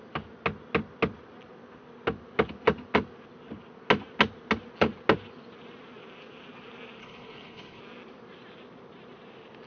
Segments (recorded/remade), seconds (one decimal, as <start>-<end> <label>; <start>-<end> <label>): 0.0-7.0 recorded; 7.0-7.8 remade; 7.8-9.7 recorded